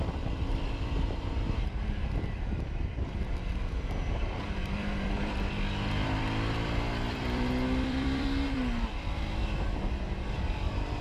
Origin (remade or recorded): remade